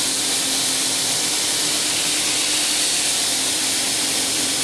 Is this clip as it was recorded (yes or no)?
yes